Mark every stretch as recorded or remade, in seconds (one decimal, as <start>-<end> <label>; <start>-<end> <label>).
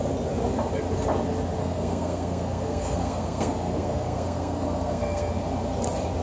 0.0-1.6 recorded; 1.6-5.3 remade; 5.3-6.2 recorded